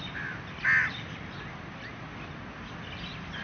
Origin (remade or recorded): recorded